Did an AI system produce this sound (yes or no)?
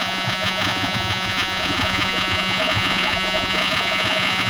yes